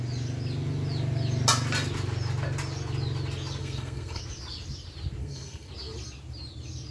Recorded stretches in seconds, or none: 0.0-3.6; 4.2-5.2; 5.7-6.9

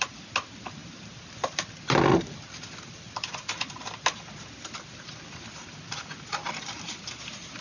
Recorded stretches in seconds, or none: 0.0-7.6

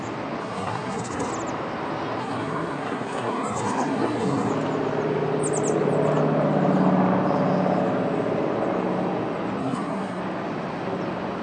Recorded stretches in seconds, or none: 0.0-0.4; 1.3-2.2; 4.5-9.6; 10.2-11.4

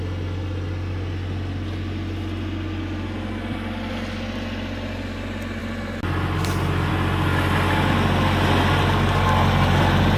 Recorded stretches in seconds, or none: 0.0-10.2

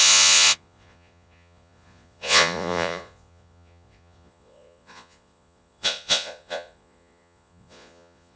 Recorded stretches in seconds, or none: none

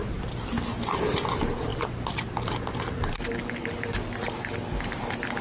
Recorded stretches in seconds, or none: 0.0-5.4

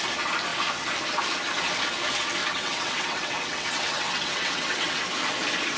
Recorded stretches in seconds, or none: 0.0-2.4; 5.0-5.8

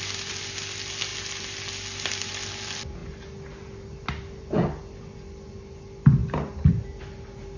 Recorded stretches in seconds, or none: 0.0-7.6